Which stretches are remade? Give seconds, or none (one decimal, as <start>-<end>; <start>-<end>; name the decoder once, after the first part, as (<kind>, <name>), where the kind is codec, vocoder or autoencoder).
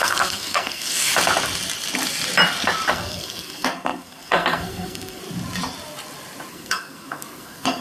0.0-1.1 (codec, SNAC); 2.9-5.2; 6.5-7.8